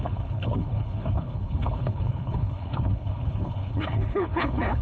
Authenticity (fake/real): fake